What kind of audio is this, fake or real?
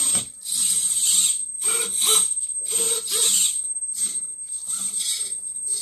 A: real